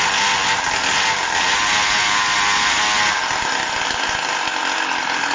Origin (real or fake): real